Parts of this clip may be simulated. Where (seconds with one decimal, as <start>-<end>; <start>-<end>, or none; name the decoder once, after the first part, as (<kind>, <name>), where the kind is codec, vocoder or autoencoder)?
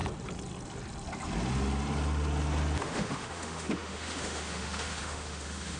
2.8-5.8 (autoencoder, DAC-VAE)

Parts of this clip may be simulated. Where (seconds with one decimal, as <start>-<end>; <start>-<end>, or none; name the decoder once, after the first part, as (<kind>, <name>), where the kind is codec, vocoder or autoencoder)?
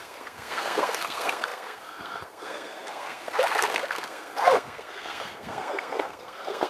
0.0-6.7 (codec, SNAC)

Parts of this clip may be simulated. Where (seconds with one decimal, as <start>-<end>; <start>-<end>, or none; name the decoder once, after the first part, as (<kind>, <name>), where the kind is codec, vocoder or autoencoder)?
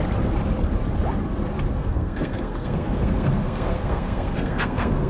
1.8-5.1 (codec, SNAC)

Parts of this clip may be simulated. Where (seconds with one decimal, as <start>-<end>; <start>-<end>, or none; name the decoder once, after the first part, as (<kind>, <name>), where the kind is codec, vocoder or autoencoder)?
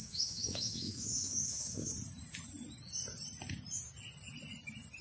0.0-1.9 (autoencoder, DAC-VAE)